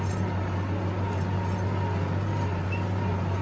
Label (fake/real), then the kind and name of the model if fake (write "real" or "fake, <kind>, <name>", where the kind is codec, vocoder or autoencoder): real